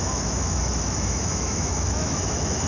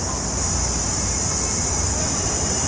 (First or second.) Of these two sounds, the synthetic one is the first